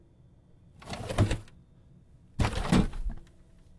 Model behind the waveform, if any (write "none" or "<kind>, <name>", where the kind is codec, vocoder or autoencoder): none